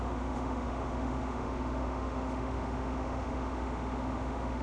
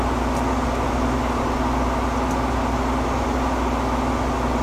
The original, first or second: second